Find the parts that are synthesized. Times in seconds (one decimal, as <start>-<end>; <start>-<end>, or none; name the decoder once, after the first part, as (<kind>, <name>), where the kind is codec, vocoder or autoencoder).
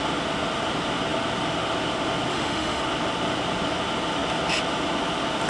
2.3-2.8 (autoencoder, DAC-VAE)